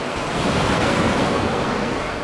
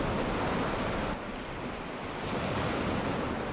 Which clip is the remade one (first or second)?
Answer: first